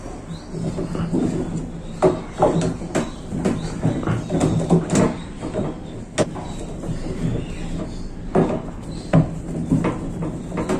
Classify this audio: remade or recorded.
recorded